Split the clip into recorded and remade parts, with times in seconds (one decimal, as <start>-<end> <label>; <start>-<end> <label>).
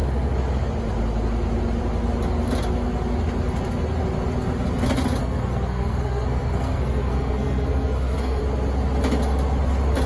0.0-5.2 recorded; 5.2-8.4 remade; 8.4-10.1 recorded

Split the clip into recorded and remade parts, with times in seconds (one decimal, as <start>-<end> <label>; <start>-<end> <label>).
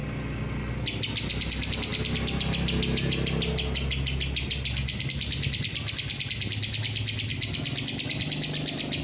0.0-9.0 recorded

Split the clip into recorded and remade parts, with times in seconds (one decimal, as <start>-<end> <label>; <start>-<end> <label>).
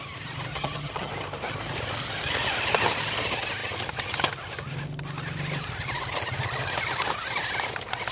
0.0-0.5 recorded; 0.5-1.1 remade; 1.1-8.1 recorded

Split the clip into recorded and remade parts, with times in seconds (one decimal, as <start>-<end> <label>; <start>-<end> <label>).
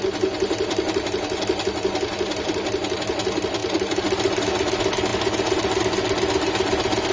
0.0-7.1 recorded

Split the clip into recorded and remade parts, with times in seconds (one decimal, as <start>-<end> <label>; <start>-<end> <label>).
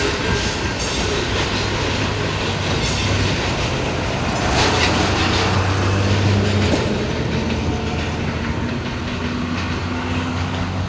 0.0-9.8 recorded; 9.8-10.9 remade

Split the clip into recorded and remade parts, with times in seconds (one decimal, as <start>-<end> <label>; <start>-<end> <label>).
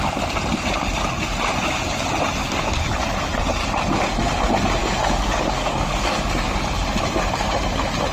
0.0-2.4 recorded; 2.4-3.0 remade; 3.0-4.8 recorded; 4.8-6.7 remade; 6.7-8.1 recorded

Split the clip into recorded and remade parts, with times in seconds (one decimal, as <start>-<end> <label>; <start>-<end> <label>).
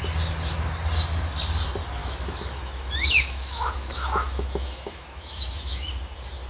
0.0-2.0 recorded; 2.0-5.9 remade; 5.9-6.5 recorded